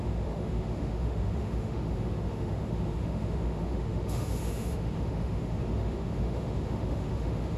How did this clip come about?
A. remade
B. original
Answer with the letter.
A